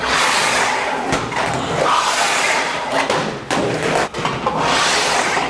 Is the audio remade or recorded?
recorded